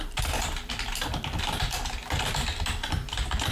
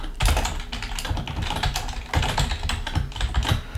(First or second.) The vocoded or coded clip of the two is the first